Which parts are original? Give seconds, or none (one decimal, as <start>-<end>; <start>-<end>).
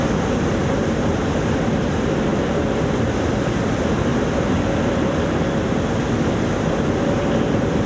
0.0-7.9